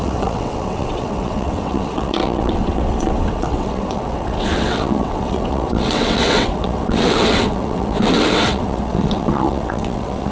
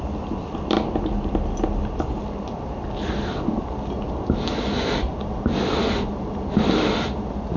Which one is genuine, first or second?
second